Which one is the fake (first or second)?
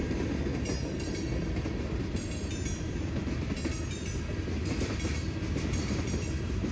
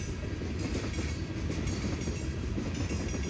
second